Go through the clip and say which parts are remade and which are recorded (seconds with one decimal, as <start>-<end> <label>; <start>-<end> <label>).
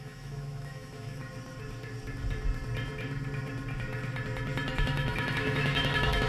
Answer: 0.0-1.2 remade; 1.2-4.8 recorded; 4.8-6.3 remade